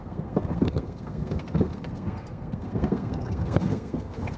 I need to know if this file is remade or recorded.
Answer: remade